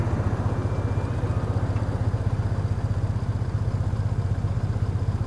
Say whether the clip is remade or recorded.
recorded